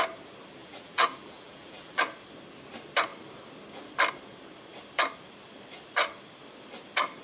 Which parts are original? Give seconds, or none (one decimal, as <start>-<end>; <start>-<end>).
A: 0.0-0.6; 2.0-7.2

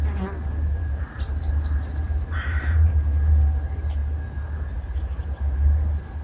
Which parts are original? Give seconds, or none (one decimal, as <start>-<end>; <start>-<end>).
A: 0.0-0.8; 2.9-6.2

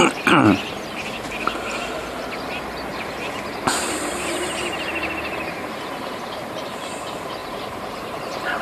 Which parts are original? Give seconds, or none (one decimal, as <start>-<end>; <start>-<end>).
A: 0.0-2.9; 7.0-7.4

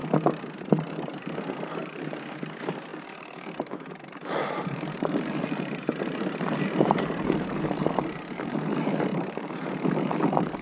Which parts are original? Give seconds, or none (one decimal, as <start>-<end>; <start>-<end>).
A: 0.0-0.6

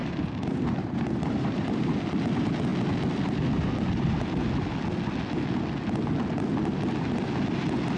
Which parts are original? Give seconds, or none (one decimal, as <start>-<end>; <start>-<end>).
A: 1.9-8.0

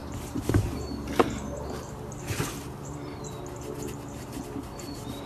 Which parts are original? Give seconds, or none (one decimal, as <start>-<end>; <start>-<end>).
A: 3.2-5.3